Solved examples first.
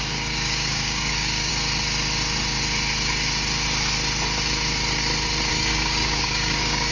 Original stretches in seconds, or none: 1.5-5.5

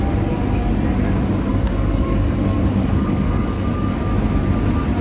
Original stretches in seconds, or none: 0.0-1.5; 4.1-5.0

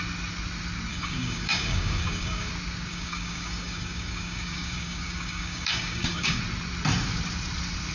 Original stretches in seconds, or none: 0.0-0.9; 2.5-2.9; 6.4-7.9